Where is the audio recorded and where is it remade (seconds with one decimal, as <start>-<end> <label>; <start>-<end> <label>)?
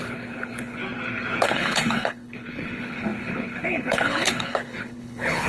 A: 0.0-0.8 remade; 0.8-1.4 recorded; 1.4-5.5 remade